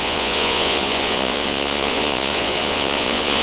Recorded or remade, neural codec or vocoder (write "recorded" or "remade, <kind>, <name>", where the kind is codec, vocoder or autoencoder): remade, vocoder, Vocos